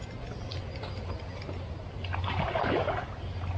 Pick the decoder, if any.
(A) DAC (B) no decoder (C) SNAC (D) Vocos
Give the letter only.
B